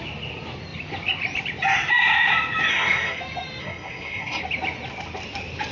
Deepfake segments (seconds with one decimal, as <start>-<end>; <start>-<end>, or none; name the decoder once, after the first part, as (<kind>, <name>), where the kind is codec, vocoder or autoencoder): 2.7-3.2 (codec, SNAC); 3.6-4.4